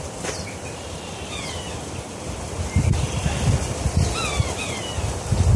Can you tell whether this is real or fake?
real